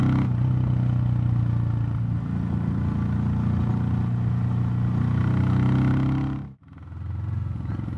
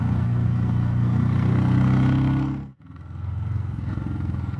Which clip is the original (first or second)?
first